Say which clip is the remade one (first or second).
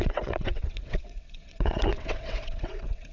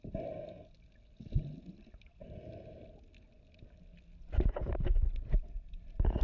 first